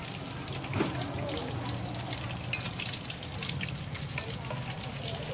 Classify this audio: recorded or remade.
recorded